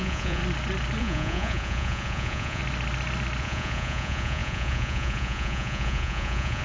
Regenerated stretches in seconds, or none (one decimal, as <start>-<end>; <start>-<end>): 0.0-0.4; 1.0-2.6; 3.4-6.6